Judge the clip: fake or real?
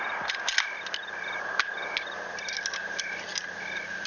real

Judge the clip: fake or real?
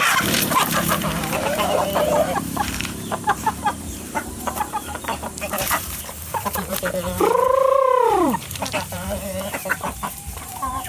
fake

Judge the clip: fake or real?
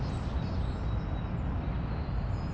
real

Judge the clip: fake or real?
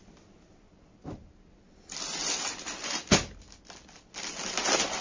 real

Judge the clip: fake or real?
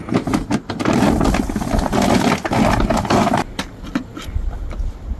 real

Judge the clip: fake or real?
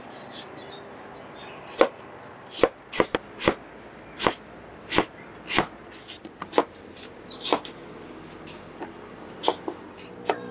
real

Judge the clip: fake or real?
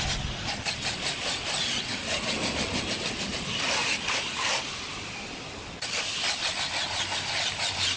real